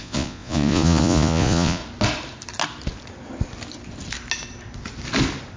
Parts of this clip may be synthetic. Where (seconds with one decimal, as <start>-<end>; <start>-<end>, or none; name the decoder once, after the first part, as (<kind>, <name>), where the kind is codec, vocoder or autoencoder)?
0.0-1.8 (vocoder, Vocos)